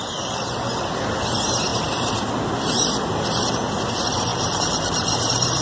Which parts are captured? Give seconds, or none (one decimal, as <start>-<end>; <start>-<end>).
0.0-1.7; 2.3-4.3